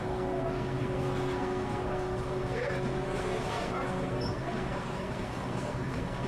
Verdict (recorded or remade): remade